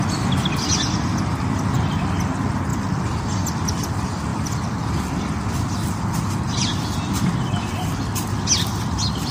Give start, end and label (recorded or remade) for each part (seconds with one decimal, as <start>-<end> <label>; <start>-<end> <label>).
0.0-9.3 recorded